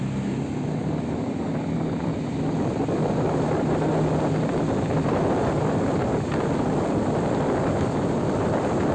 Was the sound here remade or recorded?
remade